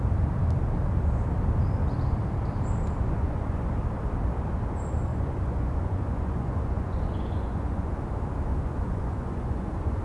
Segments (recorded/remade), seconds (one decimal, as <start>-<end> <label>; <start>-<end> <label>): 0.0-3.0 recorded; 3.0-3.7 remade; 3.7-5.1 recorded; 5.1-7.9 remade; 7.9-8.5 recorded; 8.5-10.0 remade